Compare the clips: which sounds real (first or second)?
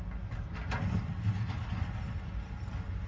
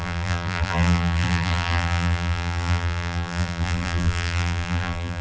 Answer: first